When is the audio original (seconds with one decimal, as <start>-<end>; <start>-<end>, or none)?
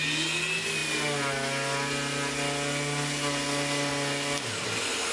0.0-5.1